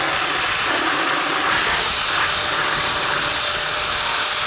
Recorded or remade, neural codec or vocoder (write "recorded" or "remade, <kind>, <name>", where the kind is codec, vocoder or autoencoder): recorded